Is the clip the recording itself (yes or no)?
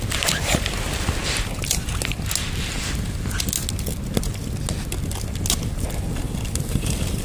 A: yes